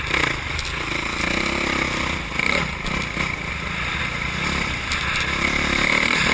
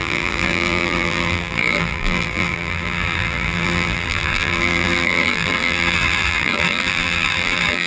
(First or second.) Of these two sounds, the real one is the first